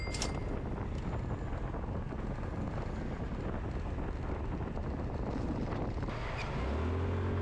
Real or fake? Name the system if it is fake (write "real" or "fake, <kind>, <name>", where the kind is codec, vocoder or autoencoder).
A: real